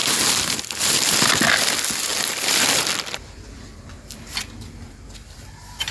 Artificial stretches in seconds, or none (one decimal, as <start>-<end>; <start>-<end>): 0.0-0.9; 2.1-5.5